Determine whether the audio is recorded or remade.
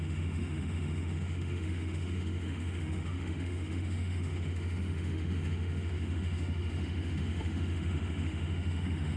remade